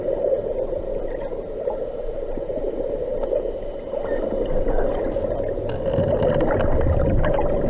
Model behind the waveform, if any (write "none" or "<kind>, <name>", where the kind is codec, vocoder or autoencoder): none